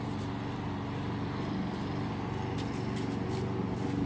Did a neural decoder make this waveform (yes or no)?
no